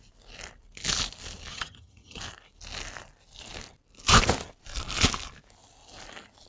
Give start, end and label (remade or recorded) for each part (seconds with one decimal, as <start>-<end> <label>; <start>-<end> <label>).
0.0-1.5 recorded; 1.5-2.2 remade; 2.2-6.5 recorded